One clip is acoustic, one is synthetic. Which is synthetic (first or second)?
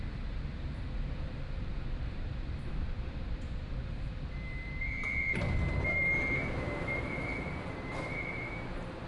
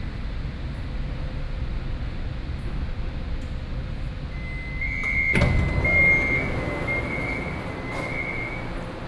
first